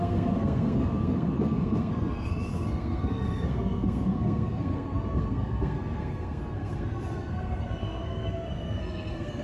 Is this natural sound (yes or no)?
no